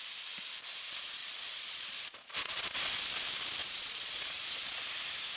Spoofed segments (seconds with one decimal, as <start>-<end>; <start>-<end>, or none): 1.2-3.0; 3.6-4.8